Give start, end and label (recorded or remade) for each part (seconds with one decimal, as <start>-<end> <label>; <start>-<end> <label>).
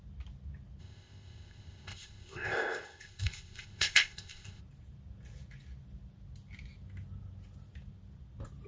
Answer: 0.0-0.8 recorded; 0.8-4.6 remade; 4.6-8.7 recorded